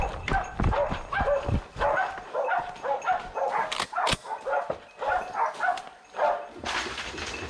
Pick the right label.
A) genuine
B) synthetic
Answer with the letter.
A